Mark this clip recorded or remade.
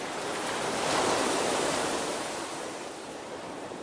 remade